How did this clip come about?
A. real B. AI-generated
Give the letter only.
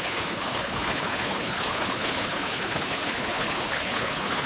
B